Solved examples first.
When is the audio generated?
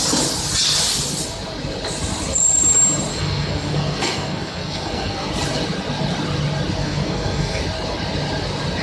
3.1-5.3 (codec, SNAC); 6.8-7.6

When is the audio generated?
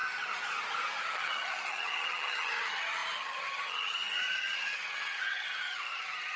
1.0-6.4 (vocoder, HiFi-GAN)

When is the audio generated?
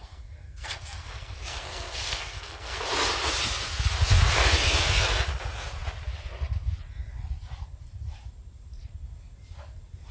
0.0-2.8 (codec, SNAC)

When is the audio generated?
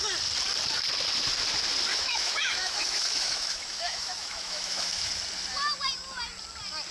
1.9-5.1 (autoencoder, DAC-VAE)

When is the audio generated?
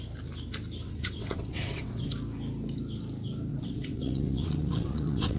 0.8-2.1 (vocoder, WaveNeXt); 3.5-5.4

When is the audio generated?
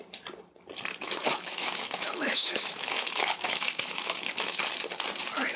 1.2-4.6 (autoencoder, DAC-VAE)